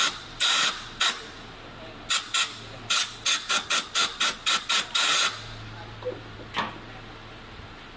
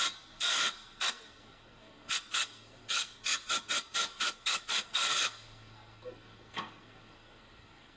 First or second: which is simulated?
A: second